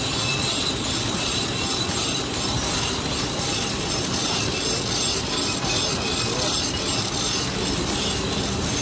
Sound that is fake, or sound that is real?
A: real